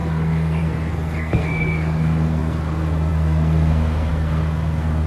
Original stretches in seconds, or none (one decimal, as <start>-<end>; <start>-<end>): none